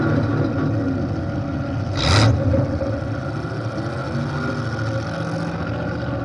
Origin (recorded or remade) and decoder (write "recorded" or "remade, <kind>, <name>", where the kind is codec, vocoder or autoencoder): recorded